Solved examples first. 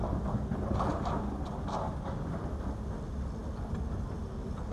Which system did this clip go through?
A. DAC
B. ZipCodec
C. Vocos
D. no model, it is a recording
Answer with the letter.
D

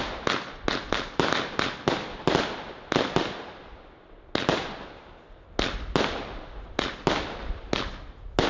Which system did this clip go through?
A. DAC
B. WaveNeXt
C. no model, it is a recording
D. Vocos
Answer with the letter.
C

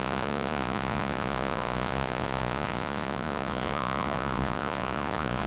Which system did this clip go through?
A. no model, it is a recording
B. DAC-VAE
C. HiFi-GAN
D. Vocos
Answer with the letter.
D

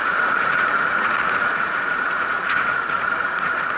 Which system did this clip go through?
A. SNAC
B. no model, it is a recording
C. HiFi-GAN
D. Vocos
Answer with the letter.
D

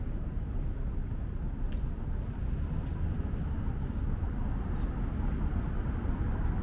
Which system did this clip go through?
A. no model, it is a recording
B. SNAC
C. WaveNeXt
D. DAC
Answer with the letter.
A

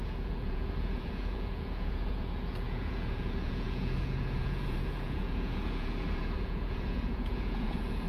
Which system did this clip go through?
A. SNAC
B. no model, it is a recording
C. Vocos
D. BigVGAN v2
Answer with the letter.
C